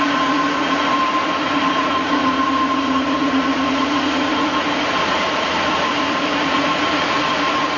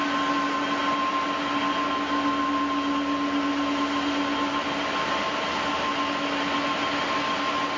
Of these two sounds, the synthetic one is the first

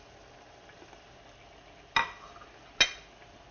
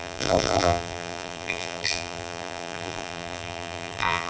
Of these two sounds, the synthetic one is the second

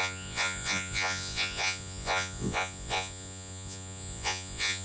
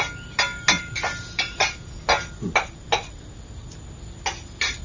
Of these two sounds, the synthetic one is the first